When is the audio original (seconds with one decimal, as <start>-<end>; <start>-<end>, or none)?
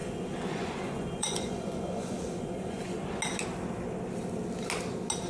3.2-5.3